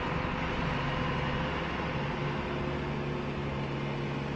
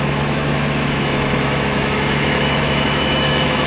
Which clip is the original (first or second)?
first